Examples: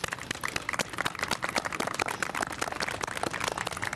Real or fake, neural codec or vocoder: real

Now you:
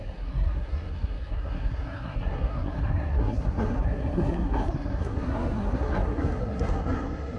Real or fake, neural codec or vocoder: fake, codec, SNAC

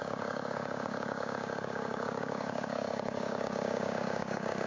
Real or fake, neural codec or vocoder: fake, codec, DAC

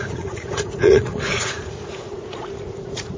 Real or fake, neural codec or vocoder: fake, vocoder, Vocos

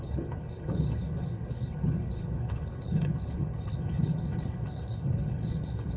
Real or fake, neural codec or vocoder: fake, codec, HILCodec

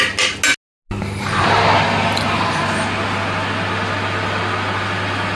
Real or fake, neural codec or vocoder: real